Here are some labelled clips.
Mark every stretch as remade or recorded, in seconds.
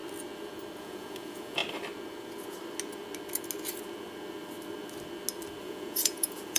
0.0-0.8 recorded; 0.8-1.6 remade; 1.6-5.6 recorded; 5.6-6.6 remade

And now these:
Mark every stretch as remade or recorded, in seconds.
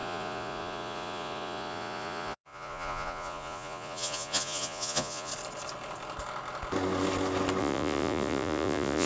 0.0-5.3 remade; 5.3-7.6 recorded; 7.6-9.1 remade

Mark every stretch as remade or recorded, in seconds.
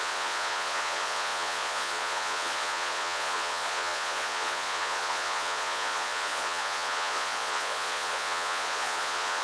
0.0-9.4 remade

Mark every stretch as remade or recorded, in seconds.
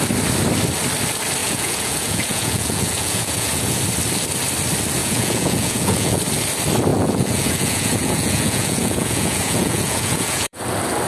0.0-1.4 recorded; 1.4-3.8 remade; 3.8-5.0 recorded; 5.0-6.2 remade; 6.2-6.9 recorded; 6.9-10.6 remade; 10.6-11.1 recorded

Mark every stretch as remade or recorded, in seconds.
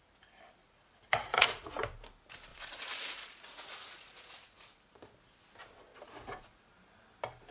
0.0-0.6 recorded; 0.6-1.7 remade; 1.7-2.5 recorded; 2.5-4.8 remade; 4.8-5.9 recorded; 5.9-6.7 remade; 6.7-7.5 recorded